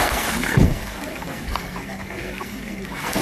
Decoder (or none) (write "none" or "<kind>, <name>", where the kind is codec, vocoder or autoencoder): codec, SNAC